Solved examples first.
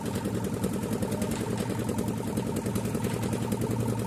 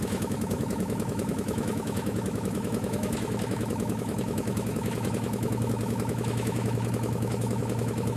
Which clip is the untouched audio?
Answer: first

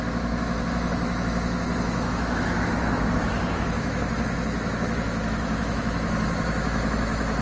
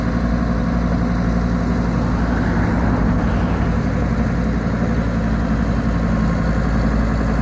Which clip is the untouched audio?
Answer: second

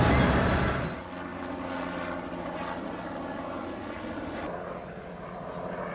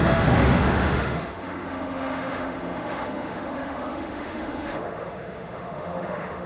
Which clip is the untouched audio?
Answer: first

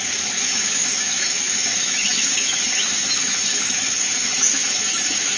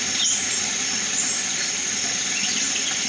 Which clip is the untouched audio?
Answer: second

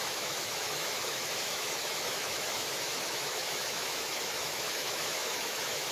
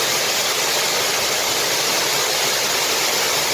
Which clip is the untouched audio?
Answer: second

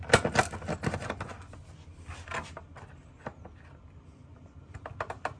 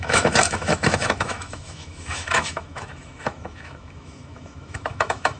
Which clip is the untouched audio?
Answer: first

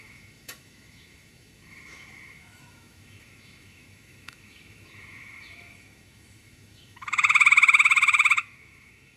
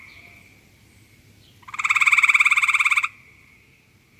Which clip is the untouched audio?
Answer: second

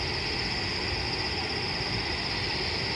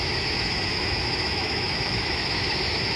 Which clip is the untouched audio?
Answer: first